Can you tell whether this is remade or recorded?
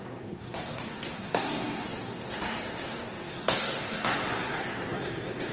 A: remade